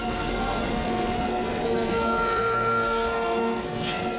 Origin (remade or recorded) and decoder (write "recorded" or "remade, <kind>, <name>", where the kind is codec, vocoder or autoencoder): remade, codec, SNAC